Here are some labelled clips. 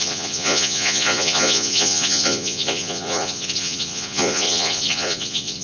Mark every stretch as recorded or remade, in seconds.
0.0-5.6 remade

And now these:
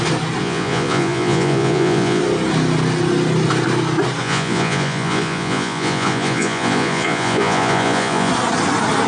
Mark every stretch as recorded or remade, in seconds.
0.0-0.4 recorded; 0.4-2.2 remade; 2.2-4.2 recorded; 4.2-8.3 remade; 8.3-9.1 recorded

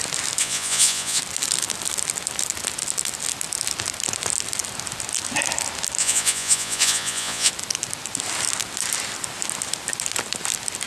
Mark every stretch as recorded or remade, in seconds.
0.0-0.4 recorded; 0.4-1.2 remade; 1.2-6.0 recorded; 6.0-7.5 remade; 7.5-10.9 recorded